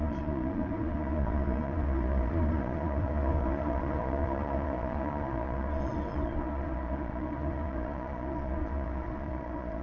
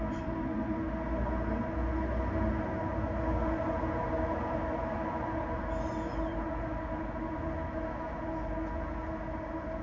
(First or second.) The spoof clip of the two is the first